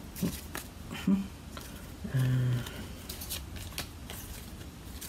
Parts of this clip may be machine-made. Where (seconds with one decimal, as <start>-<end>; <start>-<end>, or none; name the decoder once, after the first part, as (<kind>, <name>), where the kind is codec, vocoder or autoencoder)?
none